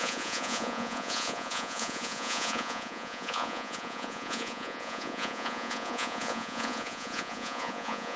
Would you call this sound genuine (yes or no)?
no